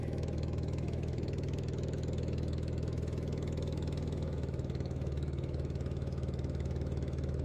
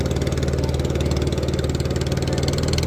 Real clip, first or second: second